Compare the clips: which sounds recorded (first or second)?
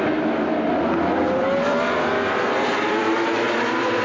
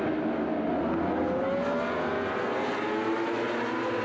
second